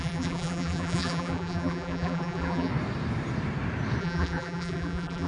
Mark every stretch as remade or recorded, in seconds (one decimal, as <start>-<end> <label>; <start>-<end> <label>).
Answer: 0.0-2.7 remade; 2.7-4.0 recorded; 4.0-5.3 remade